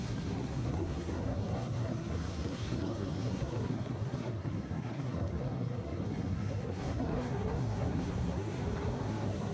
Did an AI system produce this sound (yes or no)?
yes